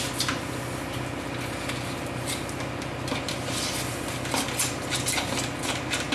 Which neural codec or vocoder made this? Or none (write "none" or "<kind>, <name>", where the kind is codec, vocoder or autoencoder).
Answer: none